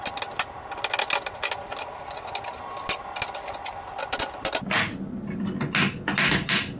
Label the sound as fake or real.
real